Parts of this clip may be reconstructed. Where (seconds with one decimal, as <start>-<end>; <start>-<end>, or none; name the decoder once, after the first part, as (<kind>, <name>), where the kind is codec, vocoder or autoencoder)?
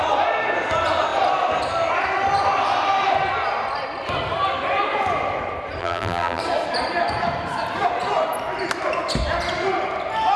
5.8-6.4 (vocoder, BigVGAN v2)